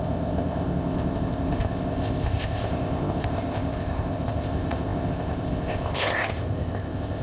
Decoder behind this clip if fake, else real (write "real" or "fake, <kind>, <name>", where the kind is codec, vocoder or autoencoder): fake, codec, ZipCodec